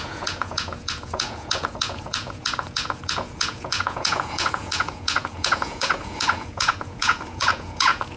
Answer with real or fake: fake